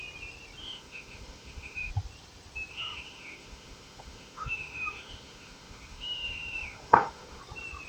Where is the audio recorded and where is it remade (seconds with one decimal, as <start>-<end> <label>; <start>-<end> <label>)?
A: 0.0-0.6 recorded; 0.6-1.9 remade; 1.9-2.7 recorded; 2.7-7.4 remade; 7.4-7.9 recorded